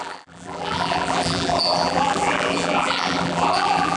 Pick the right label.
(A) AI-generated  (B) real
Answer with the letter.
A